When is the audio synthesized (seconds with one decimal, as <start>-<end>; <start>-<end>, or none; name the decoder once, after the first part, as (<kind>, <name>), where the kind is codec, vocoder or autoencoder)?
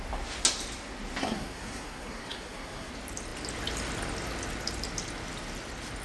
1.2-2.9 (codec, SNAC)